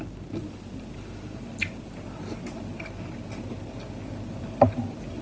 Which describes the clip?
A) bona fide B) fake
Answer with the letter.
A